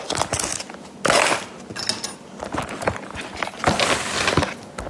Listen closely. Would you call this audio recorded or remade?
recorded